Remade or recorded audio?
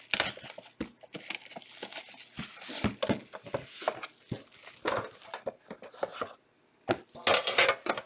recorded